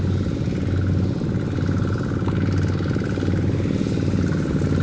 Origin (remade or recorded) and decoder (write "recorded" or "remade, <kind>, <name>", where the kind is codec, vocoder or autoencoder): recorded